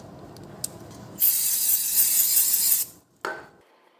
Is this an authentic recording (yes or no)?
yes